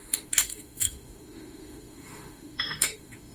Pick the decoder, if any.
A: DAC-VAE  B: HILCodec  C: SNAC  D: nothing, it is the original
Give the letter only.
A